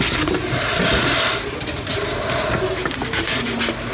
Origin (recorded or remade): recorded